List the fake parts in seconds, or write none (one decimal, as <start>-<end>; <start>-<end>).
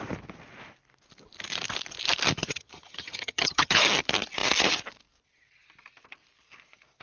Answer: 2.4-3.8